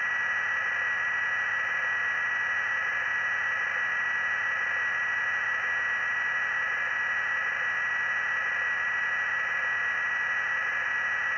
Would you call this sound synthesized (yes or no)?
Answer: no